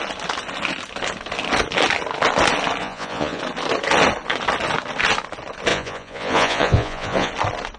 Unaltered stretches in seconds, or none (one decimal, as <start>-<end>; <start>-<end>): 0.0-2.8; 3.4-5.7; 7.3-7.8